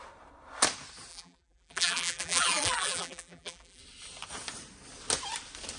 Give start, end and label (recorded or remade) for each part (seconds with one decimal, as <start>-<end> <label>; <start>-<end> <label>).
0.0-1.1 recorded; 1.1-3.8 remade; 3.8-5.8 recorded